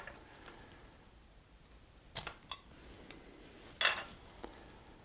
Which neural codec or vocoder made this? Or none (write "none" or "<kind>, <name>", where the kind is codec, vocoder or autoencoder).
none